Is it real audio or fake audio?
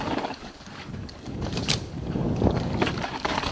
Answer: fake